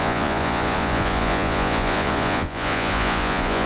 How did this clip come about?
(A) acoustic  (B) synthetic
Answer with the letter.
B